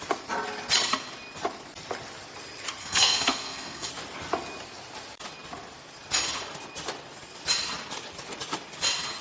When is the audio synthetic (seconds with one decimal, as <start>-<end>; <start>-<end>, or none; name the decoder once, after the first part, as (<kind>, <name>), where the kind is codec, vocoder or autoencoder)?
2.8-3.9 (codec, SNAC)